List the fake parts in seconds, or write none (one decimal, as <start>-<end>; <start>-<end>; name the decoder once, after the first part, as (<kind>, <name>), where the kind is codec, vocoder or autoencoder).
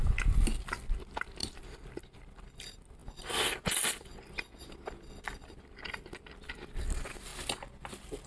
1.4-2.0 (vocoder, BigVGAN v2)